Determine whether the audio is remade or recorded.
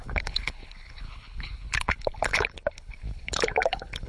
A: remade